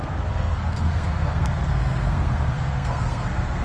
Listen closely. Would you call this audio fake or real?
fake